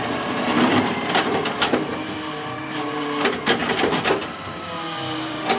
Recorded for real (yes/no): no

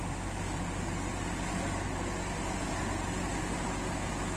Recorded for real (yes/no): yes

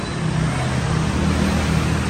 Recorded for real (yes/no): yes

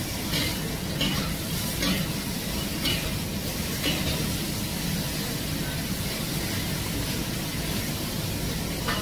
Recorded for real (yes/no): yes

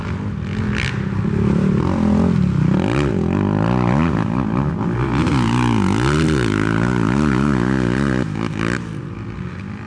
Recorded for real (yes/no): yes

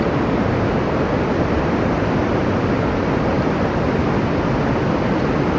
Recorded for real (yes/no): yes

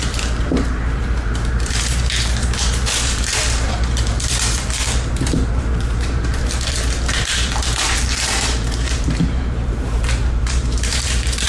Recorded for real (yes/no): no